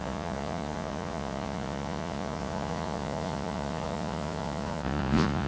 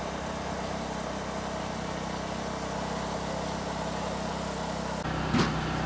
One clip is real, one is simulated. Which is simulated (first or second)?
first